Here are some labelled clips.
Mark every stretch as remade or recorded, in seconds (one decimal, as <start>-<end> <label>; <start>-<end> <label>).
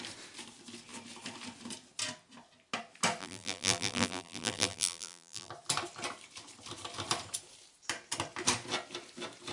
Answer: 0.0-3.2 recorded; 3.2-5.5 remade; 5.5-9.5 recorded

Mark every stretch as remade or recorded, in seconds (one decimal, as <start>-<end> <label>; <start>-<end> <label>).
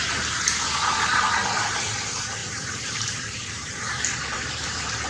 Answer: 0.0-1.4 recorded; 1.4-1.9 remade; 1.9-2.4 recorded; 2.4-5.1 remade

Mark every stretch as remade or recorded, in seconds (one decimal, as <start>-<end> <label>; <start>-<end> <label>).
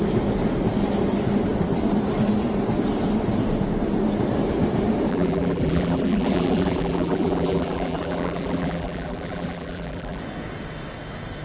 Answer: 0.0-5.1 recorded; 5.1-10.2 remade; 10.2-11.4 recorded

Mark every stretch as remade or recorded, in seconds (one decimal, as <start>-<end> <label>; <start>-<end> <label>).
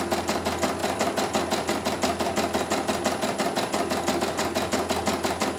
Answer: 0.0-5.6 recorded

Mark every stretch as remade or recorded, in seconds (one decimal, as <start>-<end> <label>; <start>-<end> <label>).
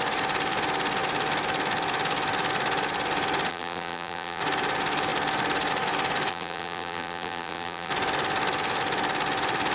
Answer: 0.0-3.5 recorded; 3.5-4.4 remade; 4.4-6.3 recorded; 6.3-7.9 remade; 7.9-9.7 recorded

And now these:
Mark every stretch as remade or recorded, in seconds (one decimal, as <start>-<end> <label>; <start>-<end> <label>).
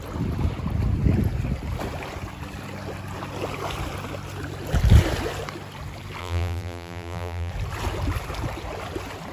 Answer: 0.0-6.2 recorded; 6.2-7.5 remade; 7.5-9.3 recorded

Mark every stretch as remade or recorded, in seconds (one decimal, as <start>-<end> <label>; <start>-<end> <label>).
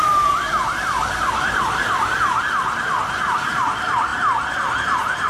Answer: 0.0-2.4 remade; 2.4-5.3 recorded